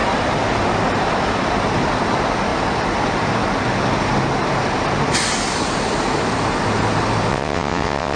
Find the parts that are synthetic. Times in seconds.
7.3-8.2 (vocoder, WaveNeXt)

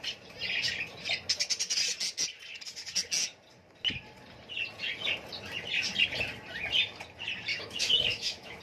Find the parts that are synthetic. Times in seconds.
7.5-8.6 (autoencoder, DAC-VAE)

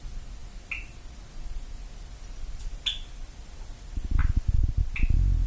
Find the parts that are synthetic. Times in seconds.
none

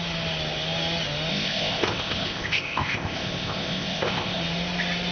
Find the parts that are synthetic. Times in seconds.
1.3-4.4 (codec, ZipCodec)

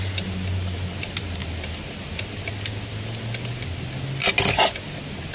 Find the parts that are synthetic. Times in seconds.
none

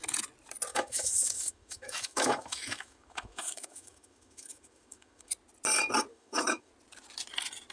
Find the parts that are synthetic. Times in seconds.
0.7-5.3 (autoencoder, DAC-VAE); 6.1-6.7

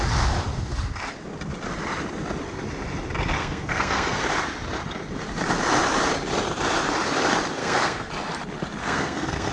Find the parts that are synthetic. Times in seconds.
3.4-4.2 (codec, SNAC); 7.6-8.1; 8.8-9.5

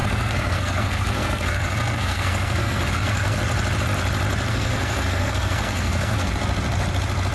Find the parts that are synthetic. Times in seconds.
0.0-3.4 (codec, SNAC); 4.5-6.3